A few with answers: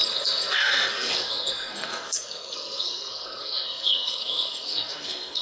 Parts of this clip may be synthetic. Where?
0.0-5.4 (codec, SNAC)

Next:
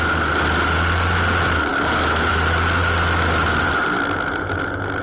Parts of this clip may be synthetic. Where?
none

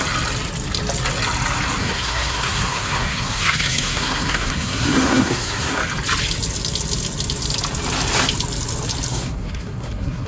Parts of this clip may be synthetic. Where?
1.8-5.8 (codec, SNAC); 9.1-10.3